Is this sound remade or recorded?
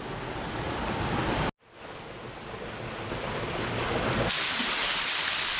recorded